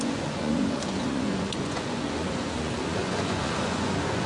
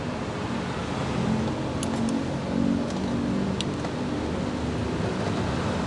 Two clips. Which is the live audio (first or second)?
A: second